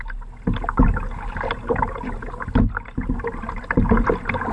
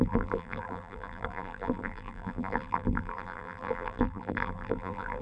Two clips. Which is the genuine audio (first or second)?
first